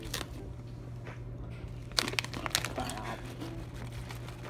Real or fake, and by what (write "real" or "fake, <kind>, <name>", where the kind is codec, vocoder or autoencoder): real